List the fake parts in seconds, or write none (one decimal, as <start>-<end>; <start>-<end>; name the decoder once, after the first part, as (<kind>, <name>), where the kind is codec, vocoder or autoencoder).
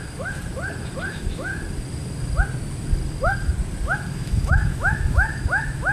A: 0.0-0.4 (autoencoder, DAC-VAE); 1.1-1.5; 4.1-5.9